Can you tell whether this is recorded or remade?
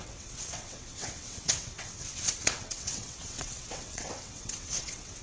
remade